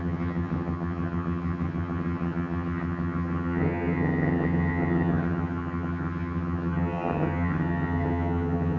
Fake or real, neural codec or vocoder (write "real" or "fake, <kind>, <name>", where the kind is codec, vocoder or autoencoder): fake, vocoder, HiFi-GAN